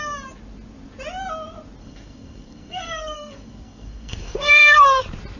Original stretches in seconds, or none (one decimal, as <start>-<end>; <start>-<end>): 0.0-1.8; 5.0-5.4